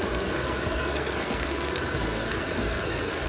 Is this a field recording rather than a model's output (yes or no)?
no